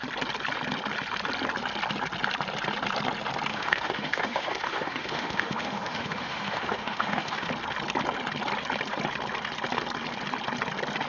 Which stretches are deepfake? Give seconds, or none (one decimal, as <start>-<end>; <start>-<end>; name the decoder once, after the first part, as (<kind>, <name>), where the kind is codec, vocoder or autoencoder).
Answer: 3.5-7.5 (autoencoder, DAC-VAE)